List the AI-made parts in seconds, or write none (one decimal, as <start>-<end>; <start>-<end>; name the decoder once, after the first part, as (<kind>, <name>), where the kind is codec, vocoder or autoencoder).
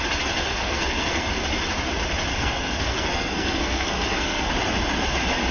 0.5-1.3 (codec, SNAC); 2.3-4.5